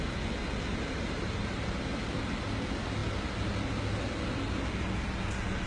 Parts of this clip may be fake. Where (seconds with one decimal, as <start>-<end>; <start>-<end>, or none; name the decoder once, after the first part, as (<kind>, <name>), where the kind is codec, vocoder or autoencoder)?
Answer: 0.7-2.0 (vocoder, BigVGAN v2)